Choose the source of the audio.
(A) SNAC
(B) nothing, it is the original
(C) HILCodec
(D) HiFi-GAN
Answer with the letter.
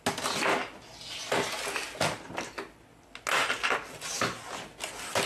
B